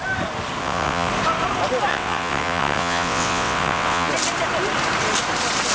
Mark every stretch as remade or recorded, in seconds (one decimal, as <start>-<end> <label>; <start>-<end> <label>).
0.0-0.6 recorded; 0.6-1.1 remade; 1.1-1.9 recorded; 1.9-4.1 remade; 4.1-5.7 recorded